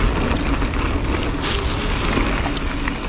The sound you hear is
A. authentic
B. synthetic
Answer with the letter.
A